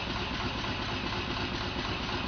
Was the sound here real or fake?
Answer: real